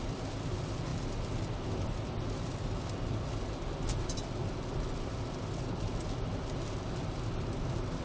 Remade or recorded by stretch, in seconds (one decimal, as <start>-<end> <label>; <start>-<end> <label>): 0.0-8.0 recorded